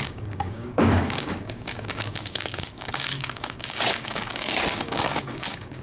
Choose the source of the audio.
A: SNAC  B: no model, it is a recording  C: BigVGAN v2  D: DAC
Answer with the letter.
D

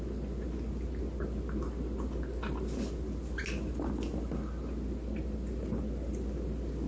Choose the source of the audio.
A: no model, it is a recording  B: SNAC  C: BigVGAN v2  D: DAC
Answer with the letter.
A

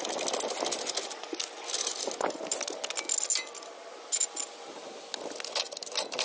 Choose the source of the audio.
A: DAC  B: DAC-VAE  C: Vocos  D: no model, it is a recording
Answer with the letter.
D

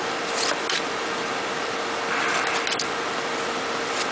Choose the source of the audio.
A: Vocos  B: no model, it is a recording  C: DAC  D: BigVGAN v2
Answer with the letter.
B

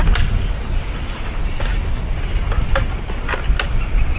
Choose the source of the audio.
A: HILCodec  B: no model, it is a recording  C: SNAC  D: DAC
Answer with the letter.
B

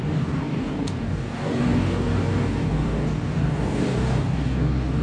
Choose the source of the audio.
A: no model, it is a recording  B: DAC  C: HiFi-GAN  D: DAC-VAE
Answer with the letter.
B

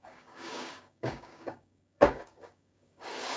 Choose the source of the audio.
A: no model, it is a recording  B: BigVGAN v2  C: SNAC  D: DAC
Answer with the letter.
D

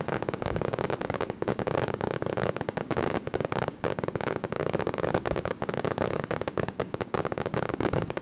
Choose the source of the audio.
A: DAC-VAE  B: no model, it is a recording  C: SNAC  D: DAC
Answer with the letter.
D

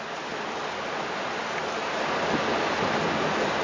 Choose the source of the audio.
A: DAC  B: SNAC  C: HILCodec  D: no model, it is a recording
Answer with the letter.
D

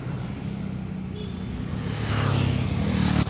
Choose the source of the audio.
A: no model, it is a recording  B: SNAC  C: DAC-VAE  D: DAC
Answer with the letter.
A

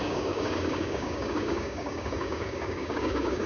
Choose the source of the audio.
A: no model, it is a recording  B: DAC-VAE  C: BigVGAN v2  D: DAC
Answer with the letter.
D